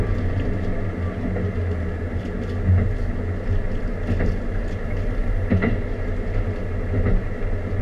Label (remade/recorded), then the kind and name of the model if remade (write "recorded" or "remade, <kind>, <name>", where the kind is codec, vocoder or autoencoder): recorded